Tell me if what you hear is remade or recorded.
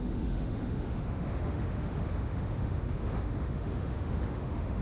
remade